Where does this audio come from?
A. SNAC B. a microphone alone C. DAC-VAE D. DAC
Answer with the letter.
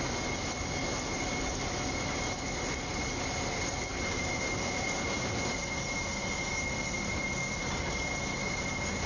B